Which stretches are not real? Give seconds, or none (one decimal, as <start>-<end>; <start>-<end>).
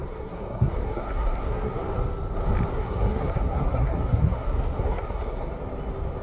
0.0-1.8; 2.7-5.5